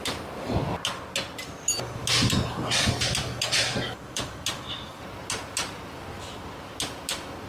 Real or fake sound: real